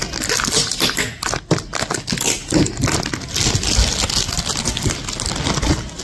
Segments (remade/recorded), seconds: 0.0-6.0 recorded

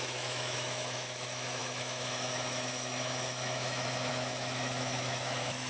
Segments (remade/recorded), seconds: 0.0-5.7 remade

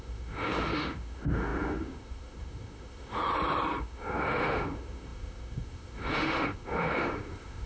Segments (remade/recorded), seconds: 0.0-3.2 remade; 3.2-3.8 recorded; 3.8-7.7 remade

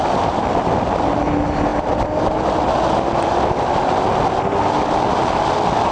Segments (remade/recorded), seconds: 0.0-5.9 recorded

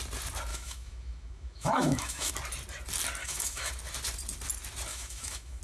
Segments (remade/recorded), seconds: 0.0-0.5 recorded; 0.5-2.3 remade; 2.3-3.2 recorded; 3.2-3.7 remade; 3.7-4.9 recorded; 4.9-5.6 remade

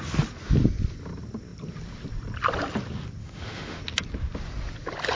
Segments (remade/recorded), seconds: 0.0-3.2 recorded; 3.2-3.8 remade; 3.8-5.1 recorded